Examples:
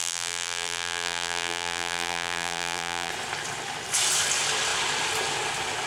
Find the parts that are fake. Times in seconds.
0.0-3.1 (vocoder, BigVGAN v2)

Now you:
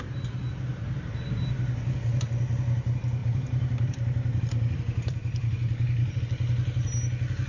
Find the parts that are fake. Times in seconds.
0.7-1.2 (vocoder, BigVGAN v2); 3.2-6.2

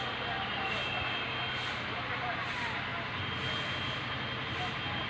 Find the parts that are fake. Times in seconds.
none

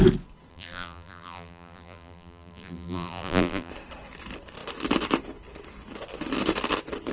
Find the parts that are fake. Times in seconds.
0.5-3.7 (vocoder, BigVGAN v2)

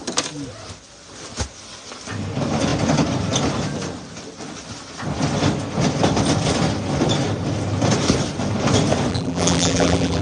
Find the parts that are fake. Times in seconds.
9.1-10.2 (vocoder, BigVGAN v2)

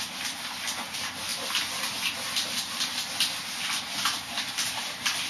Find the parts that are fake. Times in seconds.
none

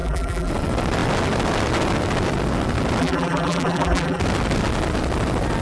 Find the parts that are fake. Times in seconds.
0.0-0.5 (vocoder, BigVGAN v2); 3.0-4.2

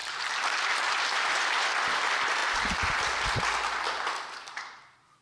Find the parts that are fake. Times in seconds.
0.0-5.2 (vocoder, BigVGAN v2)